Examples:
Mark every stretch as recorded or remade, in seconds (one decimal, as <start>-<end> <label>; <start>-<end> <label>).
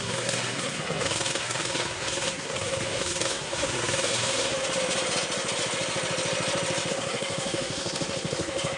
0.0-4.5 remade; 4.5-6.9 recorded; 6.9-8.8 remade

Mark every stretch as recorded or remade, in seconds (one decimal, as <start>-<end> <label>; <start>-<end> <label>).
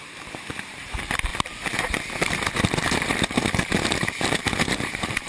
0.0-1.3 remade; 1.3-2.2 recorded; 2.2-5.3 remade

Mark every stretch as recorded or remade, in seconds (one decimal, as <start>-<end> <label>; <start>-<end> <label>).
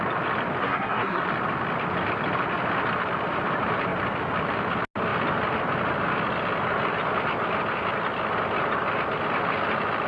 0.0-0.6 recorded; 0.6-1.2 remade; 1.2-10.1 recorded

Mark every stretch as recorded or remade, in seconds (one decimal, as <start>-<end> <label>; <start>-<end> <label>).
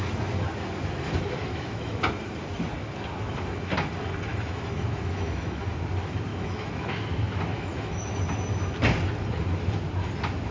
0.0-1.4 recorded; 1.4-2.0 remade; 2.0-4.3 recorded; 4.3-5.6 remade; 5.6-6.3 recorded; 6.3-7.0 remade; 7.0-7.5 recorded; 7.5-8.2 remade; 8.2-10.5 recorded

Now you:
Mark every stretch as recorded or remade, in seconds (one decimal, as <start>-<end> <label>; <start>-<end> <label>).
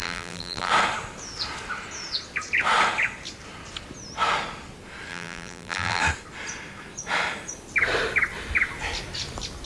0.0-0.7 remade; 0.7-5.1 recorded; 5.1-6.0 remade; 6.0-9.7 recorded